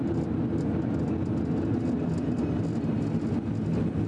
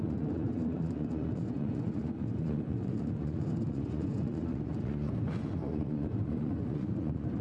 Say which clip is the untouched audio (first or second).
first